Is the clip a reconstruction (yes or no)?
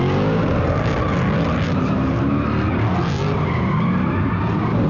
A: no